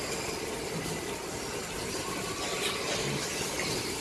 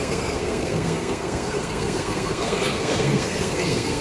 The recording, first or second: first